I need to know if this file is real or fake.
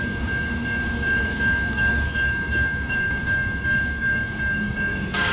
fake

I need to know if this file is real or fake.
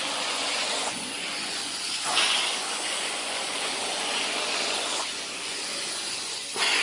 fake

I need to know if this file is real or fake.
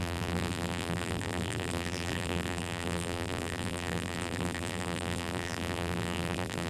fake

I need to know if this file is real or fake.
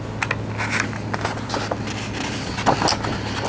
real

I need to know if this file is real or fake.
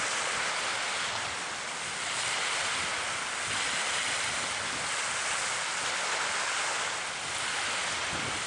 real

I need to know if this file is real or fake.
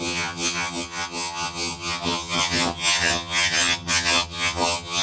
fake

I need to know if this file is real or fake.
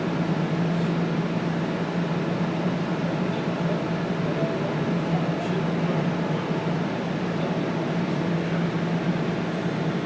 real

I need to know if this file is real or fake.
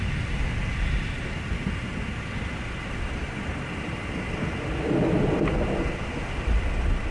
real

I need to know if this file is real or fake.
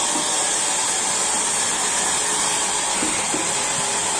real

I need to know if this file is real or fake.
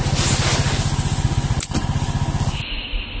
real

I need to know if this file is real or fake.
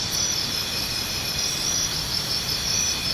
real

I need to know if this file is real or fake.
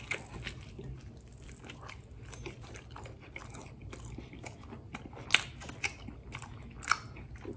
real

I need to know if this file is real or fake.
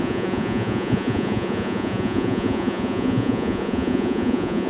fake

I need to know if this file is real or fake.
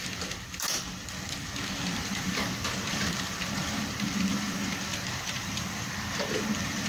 fake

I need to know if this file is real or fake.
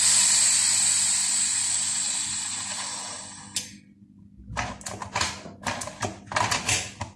real